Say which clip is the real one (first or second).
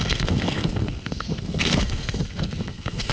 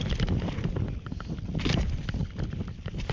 second